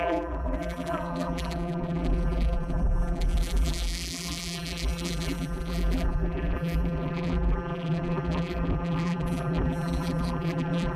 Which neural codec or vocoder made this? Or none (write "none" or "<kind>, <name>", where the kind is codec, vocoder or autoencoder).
vocoder, BigVGAN v2